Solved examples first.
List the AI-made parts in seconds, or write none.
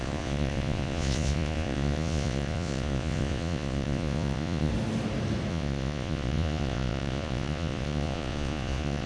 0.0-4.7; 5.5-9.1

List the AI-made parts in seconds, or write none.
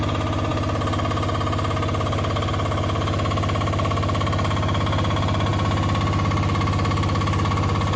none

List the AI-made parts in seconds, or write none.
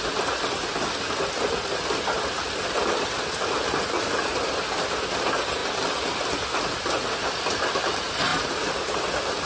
none